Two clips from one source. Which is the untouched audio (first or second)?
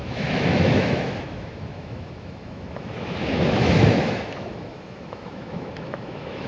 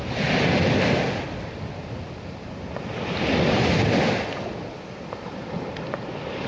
second